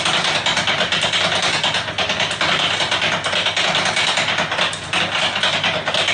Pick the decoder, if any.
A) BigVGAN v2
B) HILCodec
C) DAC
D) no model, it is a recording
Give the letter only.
D